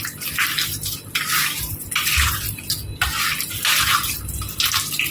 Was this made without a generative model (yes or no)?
yes